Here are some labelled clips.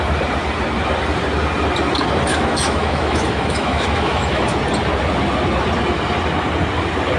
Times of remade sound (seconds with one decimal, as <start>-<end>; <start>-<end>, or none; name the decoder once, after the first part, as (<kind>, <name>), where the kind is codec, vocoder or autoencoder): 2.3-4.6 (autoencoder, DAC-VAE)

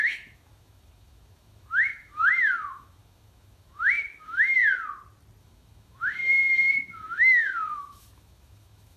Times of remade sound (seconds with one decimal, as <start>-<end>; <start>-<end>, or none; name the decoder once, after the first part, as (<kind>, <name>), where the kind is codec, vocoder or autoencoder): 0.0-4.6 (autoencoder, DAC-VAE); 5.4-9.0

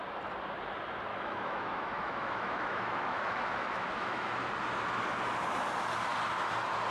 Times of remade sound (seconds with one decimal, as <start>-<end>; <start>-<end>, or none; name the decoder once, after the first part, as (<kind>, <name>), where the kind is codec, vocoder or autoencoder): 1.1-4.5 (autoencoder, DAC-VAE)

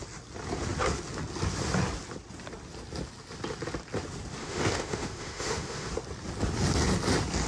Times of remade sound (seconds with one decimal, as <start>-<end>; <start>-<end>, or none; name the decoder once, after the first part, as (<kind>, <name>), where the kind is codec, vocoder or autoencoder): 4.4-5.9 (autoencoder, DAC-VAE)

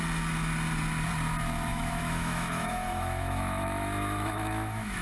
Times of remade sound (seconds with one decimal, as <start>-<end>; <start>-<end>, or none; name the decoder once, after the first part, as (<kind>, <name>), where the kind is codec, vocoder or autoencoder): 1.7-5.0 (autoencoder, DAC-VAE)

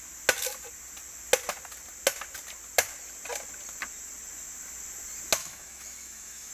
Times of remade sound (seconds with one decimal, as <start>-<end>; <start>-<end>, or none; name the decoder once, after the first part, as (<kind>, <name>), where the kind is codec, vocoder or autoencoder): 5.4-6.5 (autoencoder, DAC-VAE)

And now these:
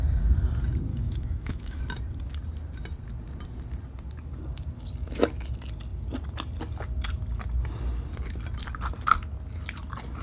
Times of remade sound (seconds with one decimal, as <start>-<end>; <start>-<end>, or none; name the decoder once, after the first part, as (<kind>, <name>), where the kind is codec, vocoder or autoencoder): 0.9-1.8 (autoencoder, DAC-VAE)